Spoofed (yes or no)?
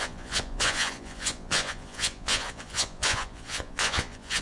yes